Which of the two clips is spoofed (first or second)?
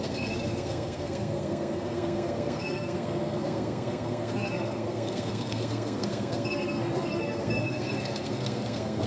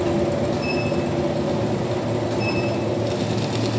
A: first